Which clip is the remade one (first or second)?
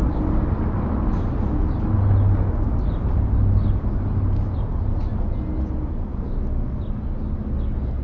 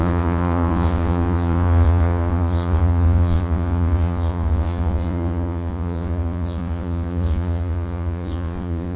second